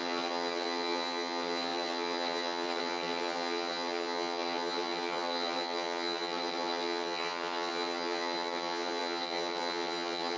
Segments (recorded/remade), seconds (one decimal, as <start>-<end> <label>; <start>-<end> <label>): 0.0-10.4 remade